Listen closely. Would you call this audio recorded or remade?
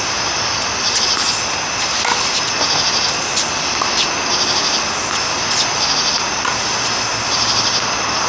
recorded